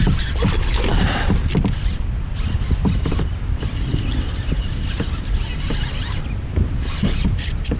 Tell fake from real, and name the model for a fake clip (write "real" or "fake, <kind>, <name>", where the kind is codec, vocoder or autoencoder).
real